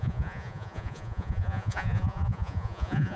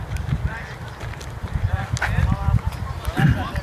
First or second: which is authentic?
second